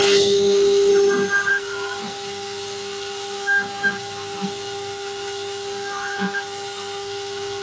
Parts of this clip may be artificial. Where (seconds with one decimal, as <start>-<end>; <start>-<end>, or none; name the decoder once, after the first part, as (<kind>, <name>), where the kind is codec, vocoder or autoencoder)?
0.0-0.9 (codec, SNAC); 1.5-7.6